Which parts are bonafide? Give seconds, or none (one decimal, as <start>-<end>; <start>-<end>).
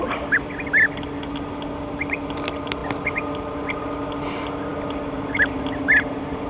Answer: 0.0-6.5